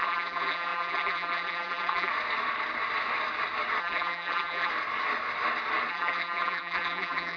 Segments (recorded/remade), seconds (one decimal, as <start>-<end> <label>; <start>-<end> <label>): 0.0-2.1 remade; 2.1-3.8 recorded; 3.8-4.7 remade; 4.7-5.9 recorded; 5.9-7.4 remade